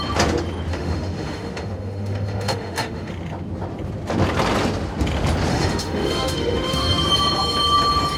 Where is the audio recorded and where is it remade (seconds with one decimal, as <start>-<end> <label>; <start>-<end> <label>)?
0.0-0.7 recorded; 0.7-3.1 remade; 3.1-5.5 recorded; 5.5-7.1 remade; 7.1-8.2 recorded